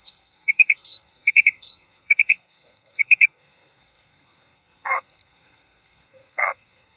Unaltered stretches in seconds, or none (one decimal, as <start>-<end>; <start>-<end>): none